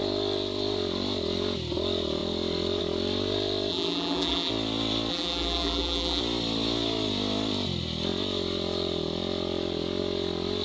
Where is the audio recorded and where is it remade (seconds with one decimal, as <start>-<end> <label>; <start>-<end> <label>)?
0.0-3.7 recorded; 3.7-4.5 remade; 4.5-5.1 recorded; 5.1-6.2 remade; 6.2-10.6 recorded